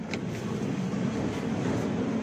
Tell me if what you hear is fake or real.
real